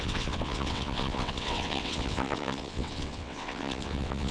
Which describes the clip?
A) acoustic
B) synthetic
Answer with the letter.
B